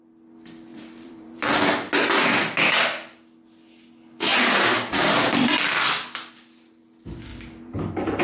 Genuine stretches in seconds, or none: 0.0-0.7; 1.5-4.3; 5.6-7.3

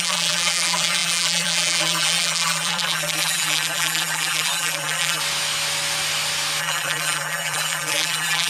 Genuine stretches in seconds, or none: 5.2-6.6

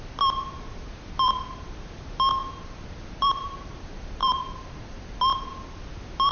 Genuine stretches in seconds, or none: 0.0-2.4; 5.4-6.3

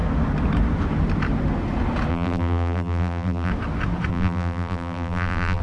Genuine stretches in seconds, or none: 0.0-2.1; 3.5-4.1